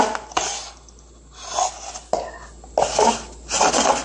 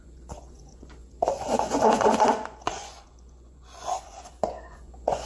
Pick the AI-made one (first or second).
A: second